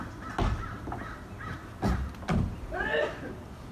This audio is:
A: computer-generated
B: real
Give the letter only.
B